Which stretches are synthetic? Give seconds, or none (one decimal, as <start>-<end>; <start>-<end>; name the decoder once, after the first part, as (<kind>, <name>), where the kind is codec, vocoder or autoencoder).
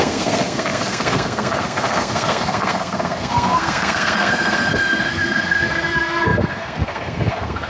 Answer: 0.0-7.7 (codec, SNAC)